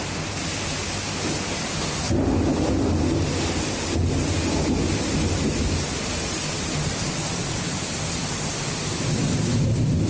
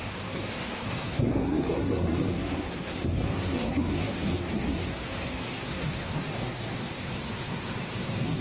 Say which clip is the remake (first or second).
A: second